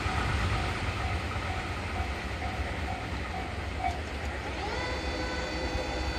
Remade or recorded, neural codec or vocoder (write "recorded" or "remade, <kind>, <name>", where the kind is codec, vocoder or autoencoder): recorded